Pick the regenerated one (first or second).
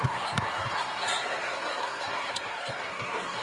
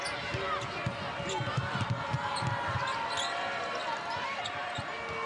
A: first